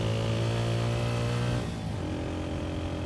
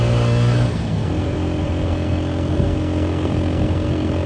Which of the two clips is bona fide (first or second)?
first